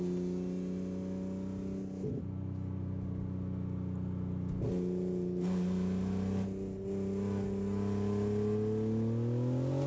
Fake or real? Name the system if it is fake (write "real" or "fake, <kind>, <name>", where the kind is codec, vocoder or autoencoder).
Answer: real